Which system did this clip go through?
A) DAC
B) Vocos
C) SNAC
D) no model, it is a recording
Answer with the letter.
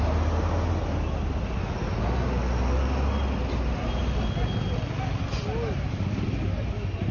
D